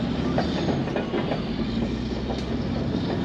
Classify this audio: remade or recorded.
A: recorded